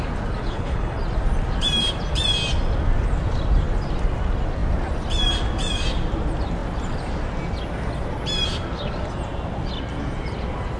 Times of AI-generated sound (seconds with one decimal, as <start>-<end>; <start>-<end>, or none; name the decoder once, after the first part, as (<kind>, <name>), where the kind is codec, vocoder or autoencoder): 0.4-1.0 (codec, HILCodec)